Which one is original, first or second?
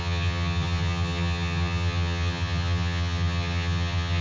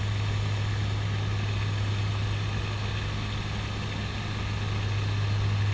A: second